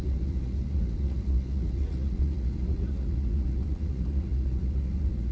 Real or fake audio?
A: fake